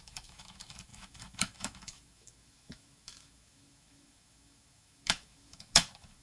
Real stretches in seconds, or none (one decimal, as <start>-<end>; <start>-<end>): none